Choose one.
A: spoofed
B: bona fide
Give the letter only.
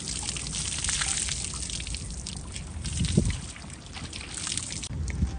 B